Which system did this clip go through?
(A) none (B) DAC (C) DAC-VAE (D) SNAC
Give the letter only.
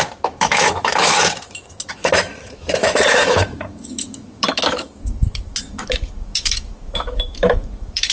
C